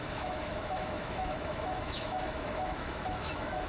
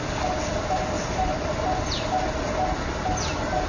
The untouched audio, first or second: second